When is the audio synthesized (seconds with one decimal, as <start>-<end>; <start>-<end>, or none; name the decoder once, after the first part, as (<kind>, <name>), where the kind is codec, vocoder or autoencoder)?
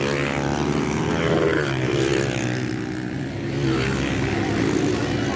none